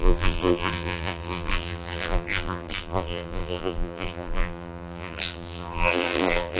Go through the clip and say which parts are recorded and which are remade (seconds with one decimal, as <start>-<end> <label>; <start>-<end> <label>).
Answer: 0.0-6.6 remade

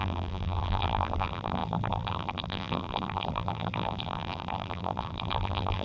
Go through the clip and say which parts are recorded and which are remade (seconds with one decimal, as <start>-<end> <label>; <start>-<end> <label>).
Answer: 0.0-5.8 remade

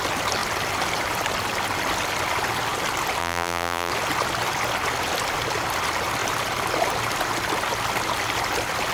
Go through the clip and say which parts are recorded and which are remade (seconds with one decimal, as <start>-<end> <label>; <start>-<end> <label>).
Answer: 0.0-3.2 recorded; 3.2-3.9 remade; 3.9-8.9 recorded

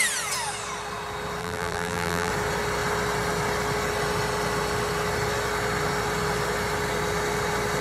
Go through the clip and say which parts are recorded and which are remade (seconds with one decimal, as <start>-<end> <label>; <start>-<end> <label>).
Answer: 0.0-1.4 recorded; 1.4-2.3 remade; 2.3-7.8 recorded

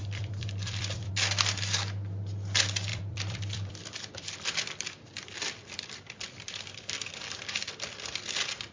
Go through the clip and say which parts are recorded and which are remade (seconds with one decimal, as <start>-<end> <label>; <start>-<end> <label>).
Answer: 0.0-1.1 remade; 1.1-2.9 recorded; 2.9-7.8 remade; 7.8-8.7 recorded

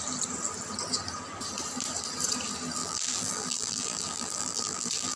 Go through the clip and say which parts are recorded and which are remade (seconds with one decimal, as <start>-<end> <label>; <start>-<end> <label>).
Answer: 0.0-2.8 recorded; 2.8-5.2 remade

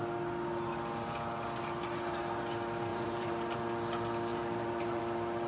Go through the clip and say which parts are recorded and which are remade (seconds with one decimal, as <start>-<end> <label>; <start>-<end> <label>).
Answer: 0.0-2.9 recorded; 2.9-3.6 remade; 3.6-4.3 recorded; 4.3-5.0 remade; 5.0-5.5 recorded